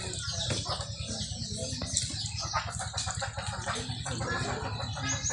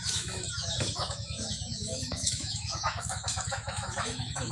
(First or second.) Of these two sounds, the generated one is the second